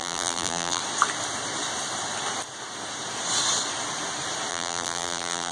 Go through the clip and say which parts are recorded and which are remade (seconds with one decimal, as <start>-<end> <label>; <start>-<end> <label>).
0.0-0.8 remade; 0.8-4.5 recorded; 4.5-5.5 remade